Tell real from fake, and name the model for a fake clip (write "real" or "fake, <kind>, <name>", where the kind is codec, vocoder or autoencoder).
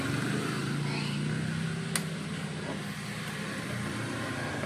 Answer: real